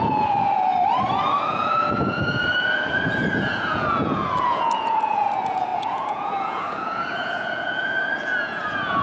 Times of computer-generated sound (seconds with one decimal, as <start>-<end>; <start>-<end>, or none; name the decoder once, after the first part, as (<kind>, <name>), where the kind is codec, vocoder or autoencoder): 0.0-0.7 (vocoder, Vocos); 1.5-9.0